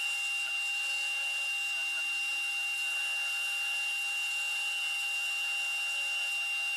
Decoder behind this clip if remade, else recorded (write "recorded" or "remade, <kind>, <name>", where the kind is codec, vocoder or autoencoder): recorded